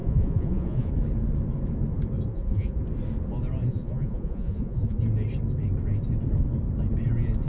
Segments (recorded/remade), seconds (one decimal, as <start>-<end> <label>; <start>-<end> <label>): 0.0-0.9 remade; 0.9-2.3 recorded; 2.3-2.8 remade; 2.8-3.7 recorded; 3.7-5.0 remade; 5.0-7.5 recorded